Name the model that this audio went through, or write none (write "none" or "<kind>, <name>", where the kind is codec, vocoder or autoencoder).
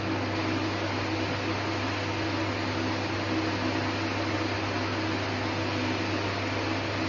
none